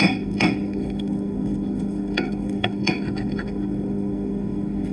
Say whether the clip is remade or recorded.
remade